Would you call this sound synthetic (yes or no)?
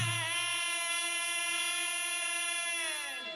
no